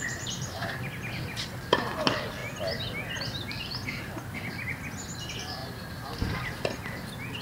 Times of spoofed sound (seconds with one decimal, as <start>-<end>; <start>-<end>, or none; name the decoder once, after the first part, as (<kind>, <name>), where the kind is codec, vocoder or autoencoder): none